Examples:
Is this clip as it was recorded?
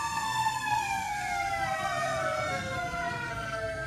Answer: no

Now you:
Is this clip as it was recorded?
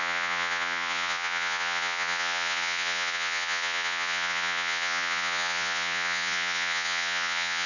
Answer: no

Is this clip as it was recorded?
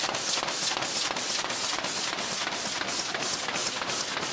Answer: yes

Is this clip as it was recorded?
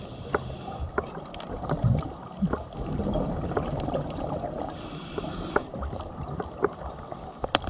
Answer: yes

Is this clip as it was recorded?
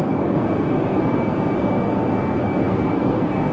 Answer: no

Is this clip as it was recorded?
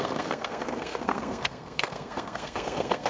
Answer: no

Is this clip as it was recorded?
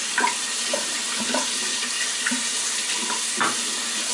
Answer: yes